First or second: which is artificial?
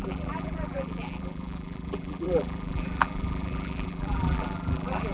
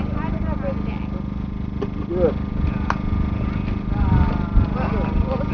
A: first